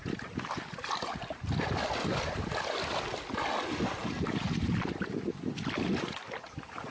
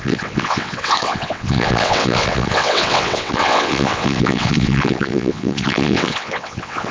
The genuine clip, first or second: first